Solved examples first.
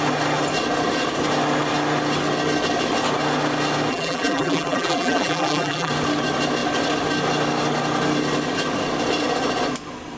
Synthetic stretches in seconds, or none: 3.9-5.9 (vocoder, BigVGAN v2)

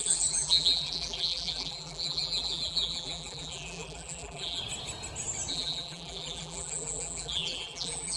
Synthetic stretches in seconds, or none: 0.0-4.6 (vocoder, BigVGAN v2); 5.5-8.2

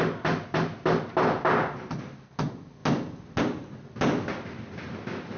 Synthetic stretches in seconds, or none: none

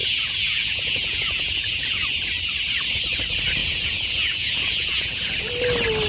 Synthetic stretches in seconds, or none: 0.0-2.0 (vocoder, Vocos); 3.6-5.5

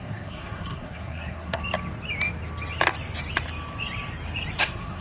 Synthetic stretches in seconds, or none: 0.0-1.6 (codec, SNAC); 4.6-5.0

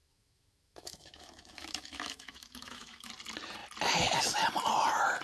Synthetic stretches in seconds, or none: 0.0-3.1 (autoencoder, DAC-VAE)

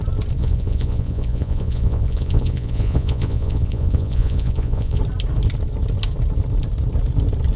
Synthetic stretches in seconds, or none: 0.4-5.0 (vocoder, Vocos)

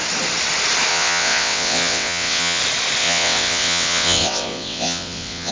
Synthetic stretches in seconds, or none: 0.9-2.6 (vocoder, WaveNeXt); 3.0-5.5